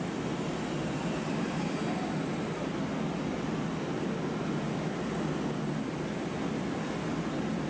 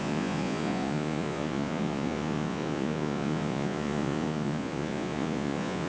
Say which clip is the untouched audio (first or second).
first